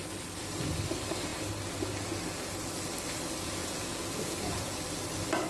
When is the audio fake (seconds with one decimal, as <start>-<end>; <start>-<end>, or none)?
3.6-4.8